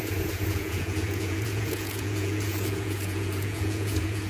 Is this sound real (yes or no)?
no